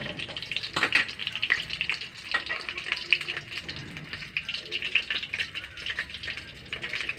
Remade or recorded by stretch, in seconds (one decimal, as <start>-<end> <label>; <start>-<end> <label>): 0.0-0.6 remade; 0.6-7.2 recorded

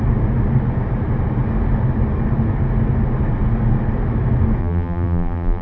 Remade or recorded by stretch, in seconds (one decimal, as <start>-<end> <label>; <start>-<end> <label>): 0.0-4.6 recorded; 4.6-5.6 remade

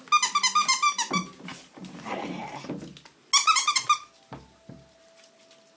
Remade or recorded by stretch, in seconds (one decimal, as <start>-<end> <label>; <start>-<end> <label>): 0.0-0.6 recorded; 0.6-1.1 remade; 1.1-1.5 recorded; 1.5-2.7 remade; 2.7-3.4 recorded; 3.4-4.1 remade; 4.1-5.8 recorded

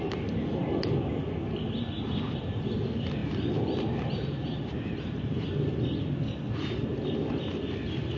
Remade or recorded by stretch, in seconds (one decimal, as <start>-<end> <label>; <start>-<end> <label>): 0.0-3.2 recorded; 3.2-5.5 remade; 5.5-8.2 recorded

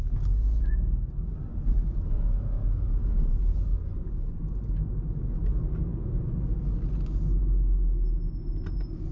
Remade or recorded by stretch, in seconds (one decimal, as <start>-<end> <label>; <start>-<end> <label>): 0.0-1.5 recorded; 1.5-2.1 remade; 2.1-3.7 recorded; 3.7-5.3 remade; 5.3-9.1 recorded

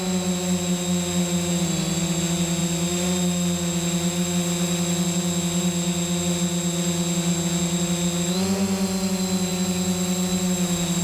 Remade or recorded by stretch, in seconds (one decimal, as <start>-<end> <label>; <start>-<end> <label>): 0.0-11.0 recorded

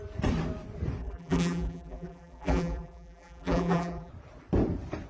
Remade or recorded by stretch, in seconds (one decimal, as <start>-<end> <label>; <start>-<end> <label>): 0.0-1.0 recorded; 1.0-4.1 remade; 4.1-5.1 recorded